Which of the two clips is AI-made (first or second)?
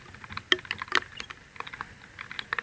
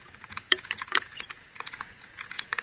second